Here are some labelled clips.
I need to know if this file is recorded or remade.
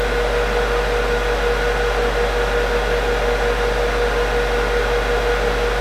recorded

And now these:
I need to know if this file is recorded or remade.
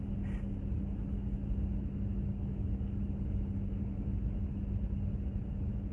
recorded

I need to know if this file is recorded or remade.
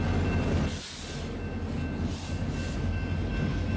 recorded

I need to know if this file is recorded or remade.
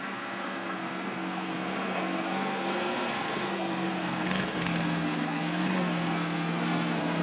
remade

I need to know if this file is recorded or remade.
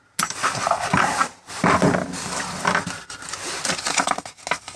recorded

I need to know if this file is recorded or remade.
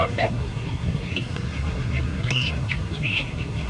remade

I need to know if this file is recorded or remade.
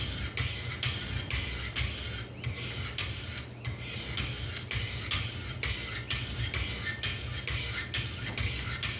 recorded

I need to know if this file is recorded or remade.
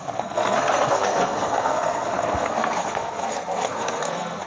remade